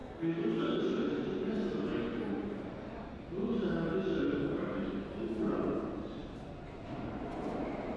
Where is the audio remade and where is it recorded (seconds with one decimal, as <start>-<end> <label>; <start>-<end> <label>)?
0.0-0.8 remade; 0.8-8.0 recorded